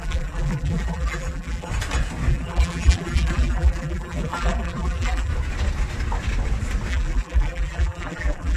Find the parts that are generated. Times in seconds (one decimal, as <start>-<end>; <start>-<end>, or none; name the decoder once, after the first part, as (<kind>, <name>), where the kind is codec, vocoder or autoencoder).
0.0-1.7 (vocoder, BigVGAN v2); 2.3-5.3; 6.9-8.6